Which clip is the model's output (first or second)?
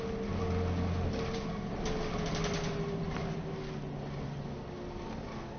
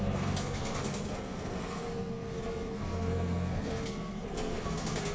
second